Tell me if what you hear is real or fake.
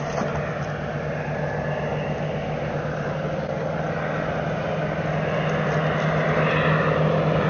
real